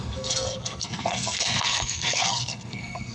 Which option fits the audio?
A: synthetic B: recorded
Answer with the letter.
A